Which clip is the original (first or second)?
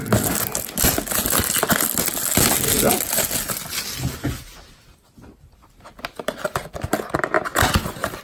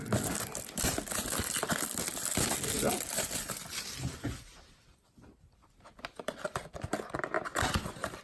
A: first